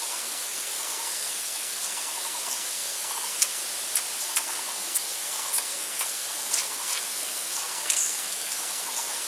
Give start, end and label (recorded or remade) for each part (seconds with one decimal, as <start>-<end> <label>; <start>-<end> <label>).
0.0-3.6 remade; 3.6-4.2 recorded; 4.2-9.3 remade